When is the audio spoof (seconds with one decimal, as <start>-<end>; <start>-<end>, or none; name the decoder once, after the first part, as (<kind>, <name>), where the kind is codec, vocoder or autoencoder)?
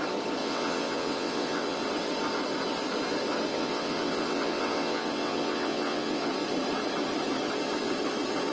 0.4-1.8 (vocoder, WaveNeXt); 3.5-6.3